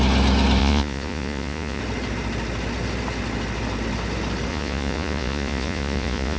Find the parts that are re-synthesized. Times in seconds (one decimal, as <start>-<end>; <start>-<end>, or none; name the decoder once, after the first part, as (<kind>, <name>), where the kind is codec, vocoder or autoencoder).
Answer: 0.6-1.8 (vocoder, Vocos); 4.5-6.4